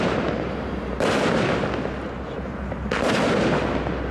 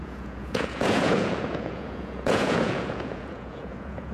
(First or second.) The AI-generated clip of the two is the second